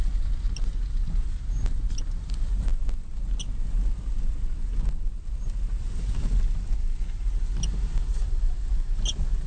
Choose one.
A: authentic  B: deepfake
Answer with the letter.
A